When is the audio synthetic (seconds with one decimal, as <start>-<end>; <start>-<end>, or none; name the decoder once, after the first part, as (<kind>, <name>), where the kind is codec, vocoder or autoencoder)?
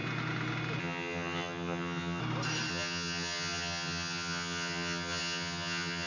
0.8-2.2 (vocoder, HiFi-GAN); 2.7-6.1